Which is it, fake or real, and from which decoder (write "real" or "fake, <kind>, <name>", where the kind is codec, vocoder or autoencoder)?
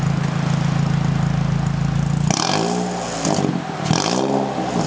real